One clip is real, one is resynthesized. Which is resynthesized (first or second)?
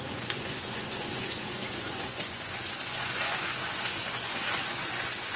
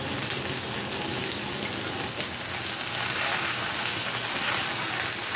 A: first